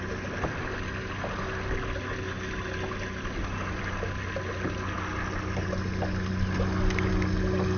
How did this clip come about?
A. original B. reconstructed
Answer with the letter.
A